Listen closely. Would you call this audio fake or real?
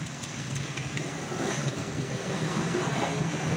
fake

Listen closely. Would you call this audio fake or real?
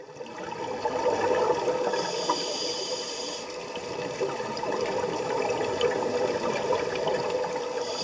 real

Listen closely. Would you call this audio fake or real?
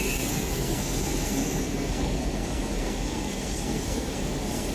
fake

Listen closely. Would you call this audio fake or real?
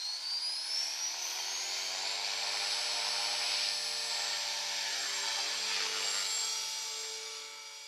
real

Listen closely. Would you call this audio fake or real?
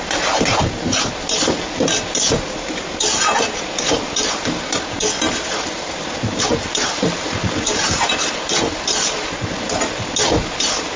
real